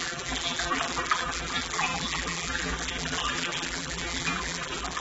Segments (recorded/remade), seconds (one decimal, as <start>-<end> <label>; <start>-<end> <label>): 0.0-5.0 remade